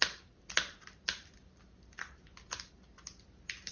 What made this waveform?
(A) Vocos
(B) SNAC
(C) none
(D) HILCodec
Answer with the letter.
C